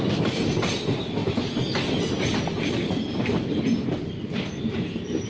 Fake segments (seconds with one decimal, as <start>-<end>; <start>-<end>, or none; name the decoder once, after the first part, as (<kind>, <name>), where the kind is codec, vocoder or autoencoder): none